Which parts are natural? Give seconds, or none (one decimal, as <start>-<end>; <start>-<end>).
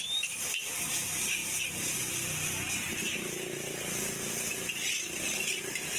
0.0-6.0